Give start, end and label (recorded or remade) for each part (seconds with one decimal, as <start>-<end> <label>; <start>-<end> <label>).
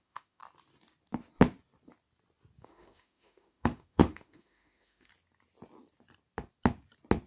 0.0-0.4 remade; 0.4-2.6 recorded; 2.6-5.1 remade; 5.1-7.3 recorded